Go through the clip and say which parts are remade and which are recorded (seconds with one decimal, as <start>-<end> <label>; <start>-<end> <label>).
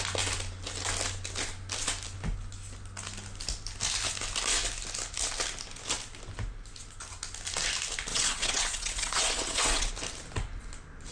0.0-8.1 recorded; 8.1-9.9 remade; 9.9-11.1 recorded